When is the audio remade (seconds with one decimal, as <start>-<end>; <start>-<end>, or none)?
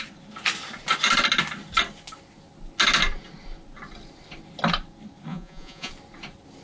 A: 5.3-5.9